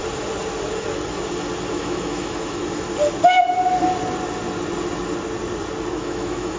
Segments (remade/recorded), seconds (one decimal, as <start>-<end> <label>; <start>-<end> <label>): 0.0-1.7 recorded; 1.7-2.6 remade; 2.6-5.9 recorded; 5.9-6.6 remade